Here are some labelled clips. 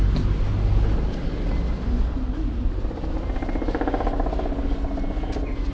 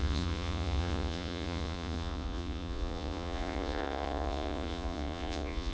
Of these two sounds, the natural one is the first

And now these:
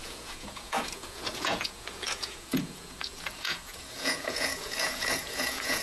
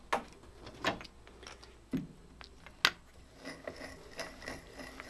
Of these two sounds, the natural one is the second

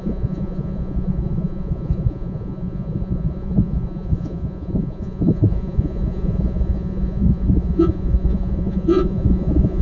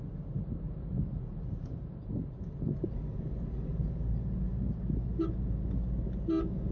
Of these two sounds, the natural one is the second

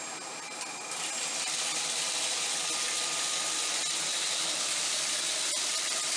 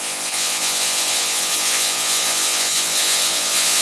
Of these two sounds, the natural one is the first